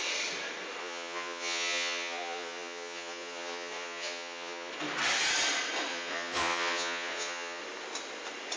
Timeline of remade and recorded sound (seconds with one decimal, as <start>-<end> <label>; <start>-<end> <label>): 0.0-0.8 recorded; 0.8-4.7 remade; 4.7-5.9 recorded; 5.9-7.6 remade; 7.6-8.6 recorded